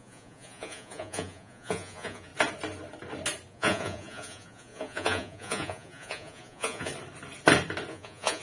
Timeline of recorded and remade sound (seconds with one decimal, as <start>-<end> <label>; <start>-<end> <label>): 0.0-2.3 remade; 2.3-3.5 recorded; 3.5-6.9 remade; 6.9-7.9 recorded; 7.9-8.4 remade